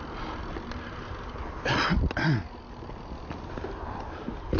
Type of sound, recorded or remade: recorded